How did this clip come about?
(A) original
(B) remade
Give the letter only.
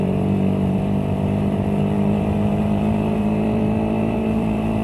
B